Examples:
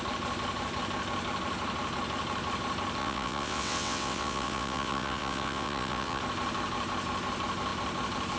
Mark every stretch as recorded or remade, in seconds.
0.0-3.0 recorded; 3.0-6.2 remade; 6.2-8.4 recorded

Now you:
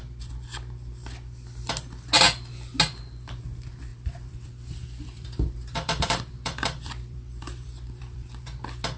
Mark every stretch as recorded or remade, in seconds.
0.0-3.9 recorded; 3.9-8.4 remade; 8.4-9.0 recorded

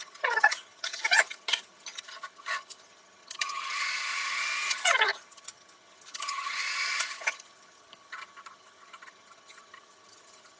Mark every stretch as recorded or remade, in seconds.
0.0-10.6 remade

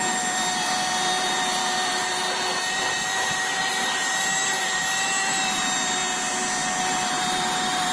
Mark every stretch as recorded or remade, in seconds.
0.0-6.0 remade; 6.0-6.8 recorded; 6.8-7.9 remade

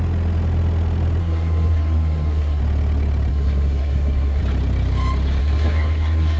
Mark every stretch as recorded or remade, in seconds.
0.0-1.2 recorded; 1.2-2.6 remade; 2.6-3.3 recorded; 3.3-4.4 remade; 4.4-5.4 recorded; 5.4-6.4 remade

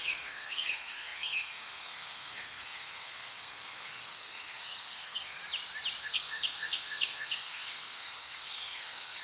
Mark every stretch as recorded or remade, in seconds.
0.0-5.4 remade; 5.4-6.0 recorded; 6.0-9.2 remade

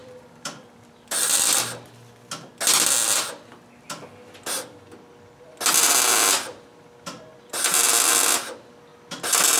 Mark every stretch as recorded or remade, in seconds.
0.0-2.1 remade; 2.1-9.6 recorded